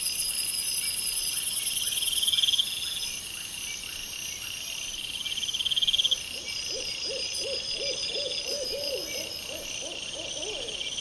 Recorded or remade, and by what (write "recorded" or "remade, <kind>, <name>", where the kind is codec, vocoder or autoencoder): recorded